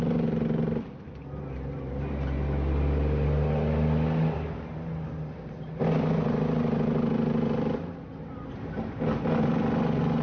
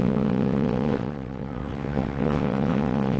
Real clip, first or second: first